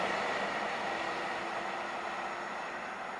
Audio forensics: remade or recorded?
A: recorded